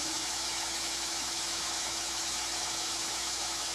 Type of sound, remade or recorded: remade